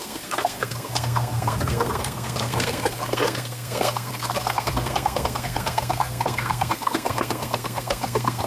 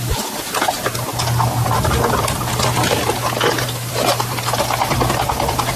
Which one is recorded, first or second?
second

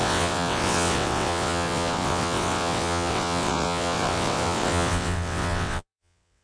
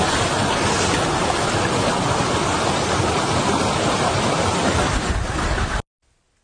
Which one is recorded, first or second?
second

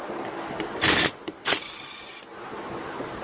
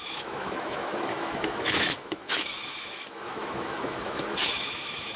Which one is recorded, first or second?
first